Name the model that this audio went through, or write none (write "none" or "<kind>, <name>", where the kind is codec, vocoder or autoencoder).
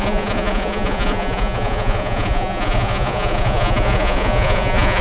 vocoder, Vocos